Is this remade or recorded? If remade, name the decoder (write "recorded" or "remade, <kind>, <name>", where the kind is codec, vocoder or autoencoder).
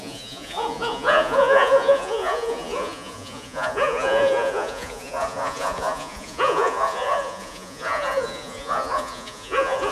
remade, vocoder, Vocos